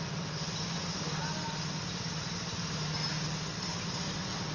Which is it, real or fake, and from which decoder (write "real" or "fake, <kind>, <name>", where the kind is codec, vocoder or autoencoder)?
real